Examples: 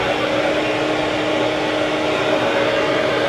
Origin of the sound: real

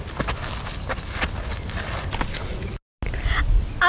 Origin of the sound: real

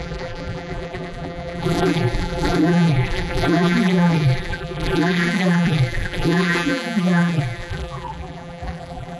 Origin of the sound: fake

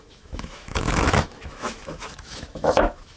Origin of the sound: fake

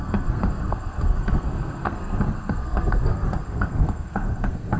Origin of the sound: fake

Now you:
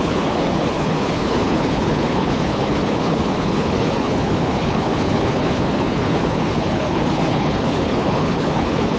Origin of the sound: fake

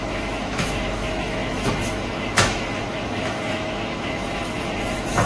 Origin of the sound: fake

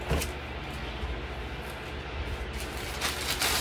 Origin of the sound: real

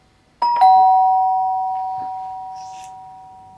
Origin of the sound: real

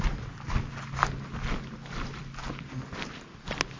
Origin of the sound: real